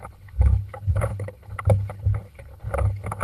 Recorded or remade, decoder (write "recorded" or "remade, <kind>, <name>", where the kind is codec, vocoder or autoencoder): remade, codec, HILCodec